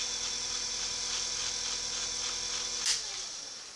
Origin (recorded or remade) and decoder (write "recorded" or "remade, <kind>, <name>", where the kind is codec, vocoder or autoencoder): recorded